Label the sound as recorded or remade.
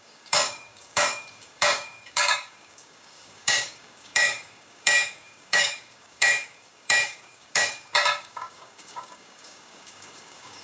remade